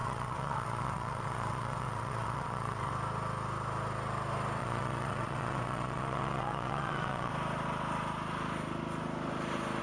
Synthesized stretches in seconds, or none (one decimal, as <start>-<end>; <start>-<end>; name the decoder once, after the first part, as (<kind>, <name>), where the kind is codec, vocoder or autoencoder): 0.0-2.9 (vocoder, WaveNeXt); 4.6-7.3